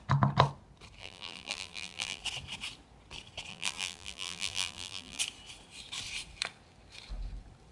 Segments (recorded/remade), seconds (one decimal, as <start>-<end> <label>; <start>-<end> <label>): 0.0-1.0 recorded; 1.0-2.2 remade; 2.2-3.5 recorded; 3.5-5.2 remade; 5.2-7.7 recorded